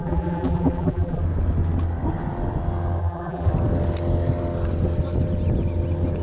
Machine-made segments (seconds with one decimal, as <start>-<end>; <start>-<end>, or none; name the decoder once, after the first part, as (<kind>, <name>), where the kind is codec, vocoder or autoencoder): 0.0-1.2 (vocoder, BigVGAN v2); 3.0-3.5